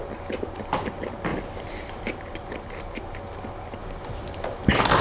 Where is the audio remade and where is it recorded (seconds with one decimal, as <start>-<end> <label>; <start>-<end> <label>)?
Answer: 0.0-1.3 recorded; 1.3-3.2 remade; 3.2-3.8 recorded; 3.8-5.0 remade